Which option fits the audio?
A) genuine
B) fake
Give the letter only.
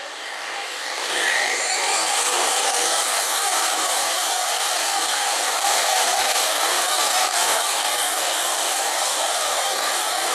B